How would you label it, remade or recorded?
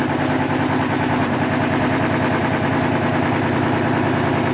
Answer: remade